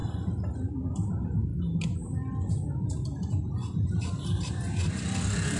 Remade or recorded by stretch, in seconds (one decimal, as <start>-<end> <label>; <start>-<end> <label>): 0.0-5.6 recorded

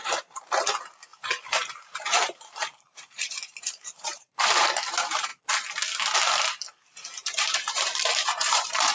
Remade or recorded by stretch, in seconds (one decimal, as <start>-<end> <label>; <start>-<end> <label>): 0.0-5.3 remade; 5.3-7.3 recorded; 7.3-8.9 remade

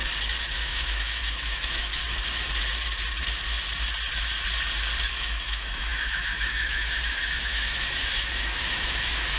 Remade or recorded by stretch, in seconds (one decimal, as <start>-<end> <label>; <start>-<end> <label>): 0.0-0.6 recorded; 0.6-1.9 remade; 1.9-5.1 recorded; 5.1-9.4 remade

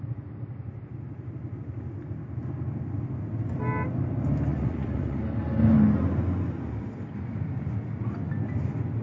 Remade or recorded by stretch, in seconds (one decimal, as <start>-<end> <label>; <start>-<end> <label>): 0.0-4.5 recorded; 4.5-5.2 remade; 5.2-9.0 recorded

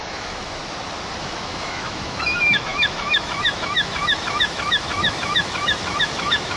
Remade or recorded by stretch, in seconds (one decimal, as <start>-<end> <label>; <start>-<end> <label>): 0.0-0.6 remade; 0.6-1.2 recorded; 1.2-6.6 remade